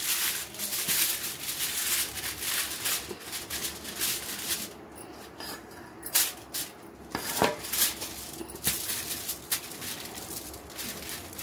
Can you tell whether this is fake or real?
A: real